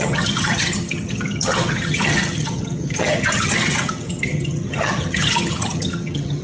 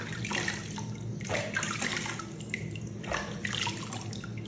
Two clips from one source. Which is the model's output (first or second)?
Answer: first